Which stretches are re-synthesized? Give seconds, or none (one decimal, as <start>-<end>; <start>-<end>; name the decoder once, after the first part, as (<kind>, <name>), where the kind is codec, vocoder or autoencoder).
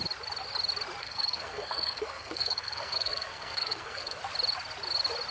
1.0-4.2 (codec, SNAC)